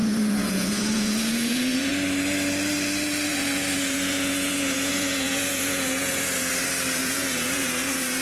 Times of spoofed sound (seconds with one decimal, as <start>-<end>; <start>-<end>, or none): 0.0-1.9; 3.3-6.5; 7.0-8.2